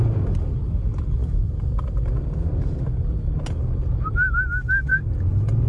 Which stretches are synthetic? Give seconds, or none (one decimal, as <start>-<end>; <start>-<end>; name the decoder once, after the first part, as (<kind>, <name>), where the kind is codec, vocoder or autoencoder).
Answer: none